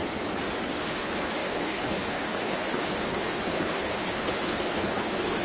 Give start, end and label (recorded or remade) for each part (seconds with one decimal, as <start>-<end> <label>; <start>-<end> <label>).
0.0-0.6 recorded; 0.6-5.4 remade